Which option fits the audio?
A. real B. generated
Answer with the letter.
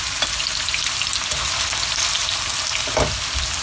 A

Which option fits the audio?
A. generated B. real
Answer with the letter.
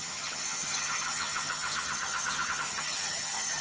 A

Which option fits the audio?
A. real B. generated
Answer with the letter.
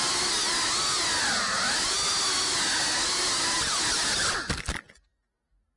A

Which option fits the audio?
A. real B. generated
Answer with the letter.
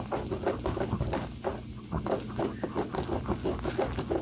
A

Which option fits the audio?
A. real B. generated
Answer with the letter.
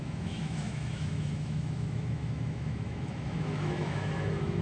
B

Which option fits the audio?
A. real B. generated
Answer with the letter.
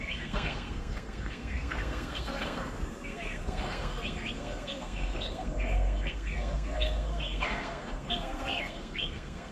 B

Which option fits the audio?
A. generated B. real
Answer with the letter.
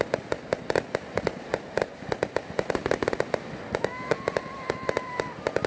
B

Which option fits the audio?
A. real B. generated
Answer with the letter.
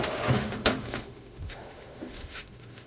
B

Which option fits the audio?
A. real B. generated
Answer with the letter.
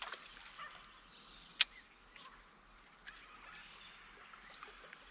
A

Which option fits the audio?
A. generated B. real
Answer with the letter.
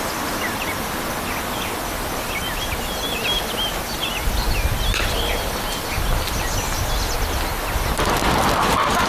B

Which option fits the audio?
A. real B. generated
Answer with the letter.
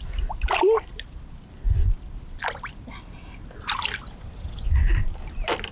A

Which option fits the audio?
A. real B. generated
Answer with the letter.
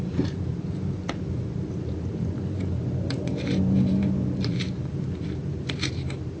B